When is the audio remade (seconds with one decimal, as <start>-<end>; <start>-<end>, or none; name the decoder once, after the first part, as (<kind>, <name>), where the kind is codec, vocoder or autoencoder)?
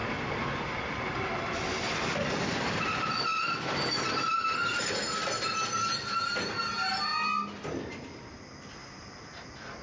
0.0-4.8 (vocoder, BigVGAN v2); 8.8-9.8